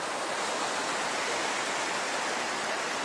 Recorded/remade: recorded